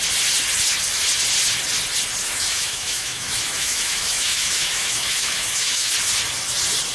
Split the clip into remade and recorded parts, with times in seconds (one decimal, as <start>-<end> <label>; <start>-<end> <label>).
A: 0.0-2.2 recorded; 2.2-5.9 remade; 5.9-6.9 recorded